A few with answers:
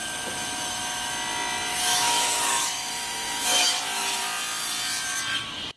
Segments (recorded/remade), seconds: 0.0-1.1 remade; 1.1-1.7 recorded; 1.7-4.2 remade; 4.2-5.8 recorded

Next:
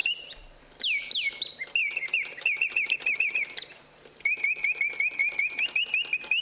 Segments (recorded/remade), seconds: 0.0-0.6 remade; 0.6-1.8 recorded; 1.8-4.8 remade; 4.8-5.2 recorded; 5.2-5.8 remade; 5.8-6.4 recorded

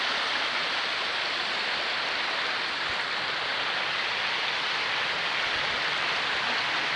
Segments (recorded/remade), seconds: 0.0-0.6 recorded; 0.6-3.1 remade; 3.1-7.0 recorded

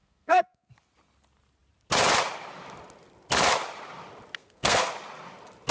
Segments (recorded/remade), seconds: 0.0-0.7 remade; 0.7-4.4 recorded; 4.4-4.9 remade; 4.9-5.7 recorded

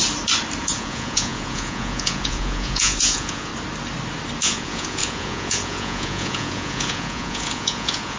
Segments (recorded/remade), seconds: 0.0-0.6 recorded; 0.6-3.5 remade; 3.5-4.4 recorded; 4.4-8.2 remade